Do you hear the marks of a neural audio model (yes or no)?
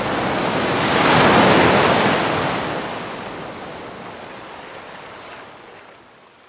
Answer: no